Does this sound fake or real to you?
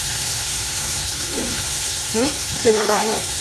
fake